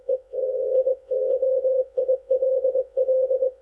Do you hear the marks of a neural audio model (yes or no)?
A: yes